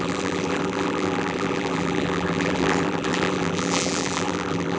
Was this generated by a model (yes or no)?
yes